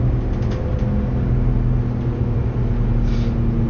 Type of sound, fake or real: real